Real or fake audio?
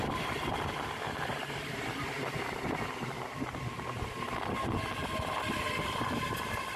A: fake